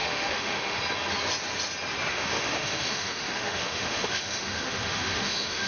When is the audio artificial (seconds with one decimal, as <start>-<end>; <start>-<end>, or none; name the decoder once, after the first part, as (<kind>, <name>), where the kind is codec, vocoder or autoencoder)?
0.0-0.8 (autoencoder, DAC-VAE); 2.1-5.7